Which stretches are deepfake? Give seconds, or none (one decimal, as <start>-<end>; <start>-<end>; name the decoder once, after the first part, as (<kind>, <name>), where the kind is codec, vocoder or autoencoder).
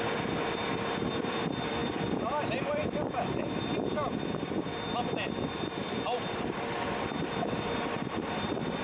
0.0-8.8 (vocoder, BigVGAN v2)